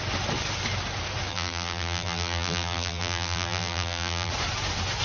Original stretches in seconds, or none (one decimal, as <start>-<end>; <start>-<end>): 0.0-1.3; 4.3-5.0